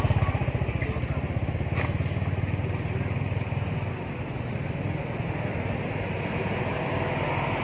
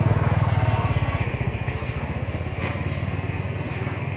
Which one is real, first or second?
first